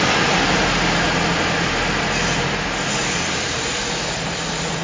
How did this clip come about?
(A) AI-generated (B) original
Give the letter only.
B